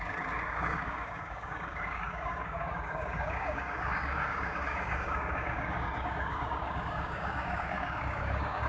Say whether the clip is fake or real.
fake